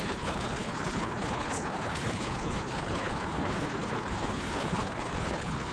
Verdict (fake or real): fake